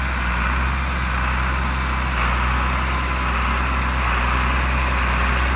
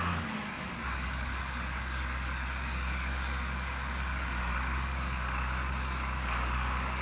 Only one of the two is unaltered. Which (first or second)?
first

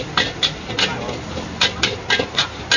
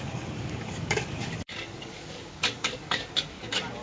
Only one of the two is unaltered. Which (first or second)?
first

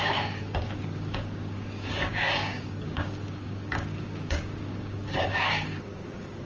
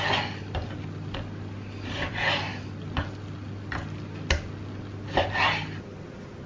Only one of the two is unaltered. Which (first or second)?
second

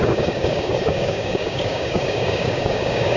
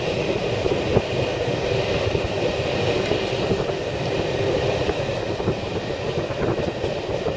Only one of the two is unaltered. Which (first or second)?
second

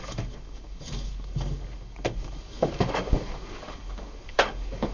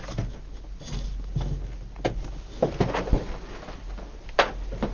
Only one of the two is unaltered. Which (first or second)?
second